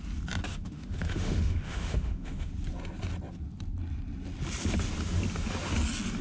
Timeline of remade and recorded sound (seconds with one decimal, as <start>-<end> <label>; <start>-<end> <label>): 0.0-0.5 recorded; 0.5-2.5 remade; 2.5-6.2 recorded